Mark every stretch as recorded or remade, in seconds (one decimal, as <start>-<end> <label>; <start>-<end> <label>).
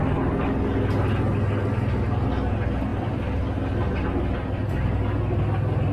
0.0-5.9 recorded